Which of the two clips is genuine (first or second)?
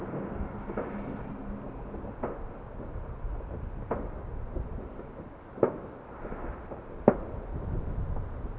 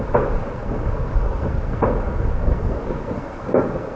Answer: first